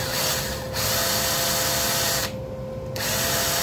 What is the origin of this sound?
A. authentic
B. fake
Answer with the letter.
A